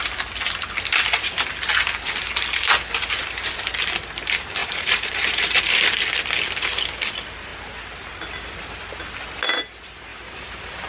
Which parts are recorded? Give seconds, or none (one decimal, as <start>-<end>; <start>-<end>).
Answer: 0.0-1.7; 3.6-4.6; 5.6-10.1

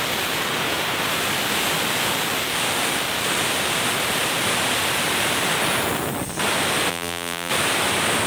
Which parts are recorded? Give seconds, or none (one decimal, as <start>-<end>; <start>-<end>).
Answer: 0.0-6.9; 7.5-8.3

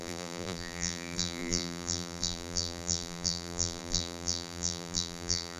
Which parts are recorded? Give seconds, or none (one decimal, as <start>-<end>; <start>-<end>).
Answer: none

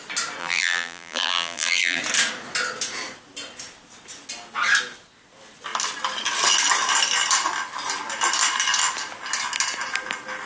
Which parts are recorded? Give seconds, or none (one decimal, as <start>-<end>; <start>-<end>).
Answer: 0.0-0.4; 2.0-10.5

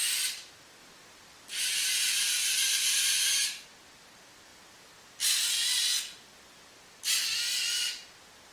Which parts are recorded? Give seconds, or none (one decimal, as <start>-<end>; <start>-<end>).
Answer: 0.0-8.5

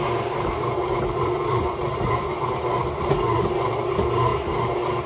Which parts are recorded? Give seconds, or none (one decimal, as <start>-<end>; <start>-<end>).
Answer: 4.3-5.1

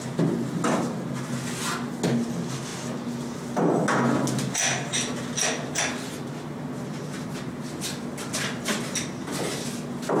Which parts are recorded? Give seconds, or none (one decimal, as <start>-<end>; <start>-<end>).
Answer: 0.0-10.2

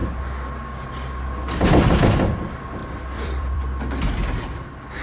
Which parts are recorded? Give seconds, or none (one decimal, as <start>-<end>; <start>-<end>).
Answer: 0.0-2.8; 3.6-5.0